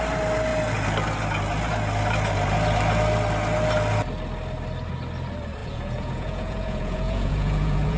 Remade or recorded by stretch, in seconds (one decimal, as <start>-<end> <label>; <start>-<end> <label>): 0.0-5.6 recorded; 5.6-8.0 remade